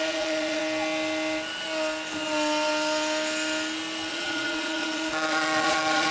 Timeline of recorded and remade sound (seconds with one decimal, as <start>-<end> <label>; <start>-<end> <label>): 0.0-0.6 remade; 0.6-4.1 recorded; 4.1-6.1 remade